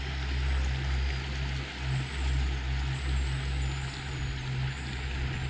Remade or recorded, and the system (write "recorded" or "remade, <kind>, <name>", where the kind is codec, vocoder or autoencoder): recorded